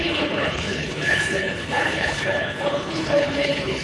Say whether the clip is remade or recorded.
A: remade